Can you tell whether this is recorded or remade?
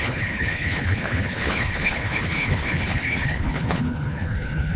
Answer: remade